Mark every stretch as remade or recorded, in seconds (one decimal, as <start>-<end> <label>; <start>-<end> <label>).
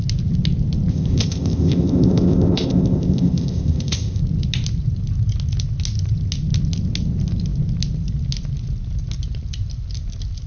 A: 0.0-0.9 recorded; 0.9-4.2 remade; 4.2-10.5 recorded